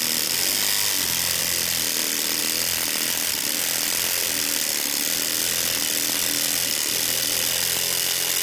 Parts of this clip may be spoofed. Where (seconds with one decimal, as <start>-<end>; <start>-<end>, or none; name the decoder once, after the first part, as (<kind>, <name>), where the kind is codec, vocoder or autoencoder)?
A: none